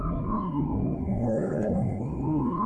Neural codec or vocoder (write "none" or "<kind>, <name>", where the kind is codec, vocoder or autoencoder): codec, SNAC